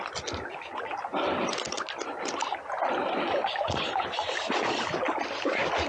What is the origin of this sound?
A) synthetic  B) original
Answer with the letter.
B